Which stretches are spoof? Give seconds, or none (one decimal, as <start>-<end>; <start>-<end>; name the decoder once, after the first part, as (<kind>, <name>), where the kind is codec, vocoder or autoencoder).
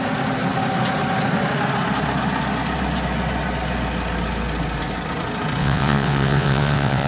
5.6-7.1 (vocoder, WaveNeXt)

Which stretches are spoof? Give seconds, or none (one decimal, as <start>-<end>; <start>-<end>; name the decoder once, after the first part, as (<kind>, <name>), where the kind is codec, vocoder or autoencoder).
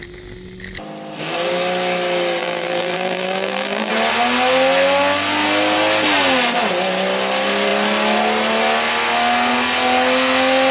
2.4-3.9 (vocoder, BigVGAN v2)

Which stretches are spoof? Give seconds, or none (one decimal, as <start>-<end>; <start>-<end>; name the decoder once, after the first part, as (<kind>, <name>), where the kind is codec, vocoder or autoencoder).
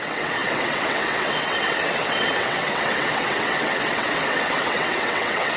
0.0-5.6 (vocoder, WaveNeXt)